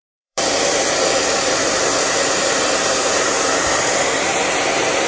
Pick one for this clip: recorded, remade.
remade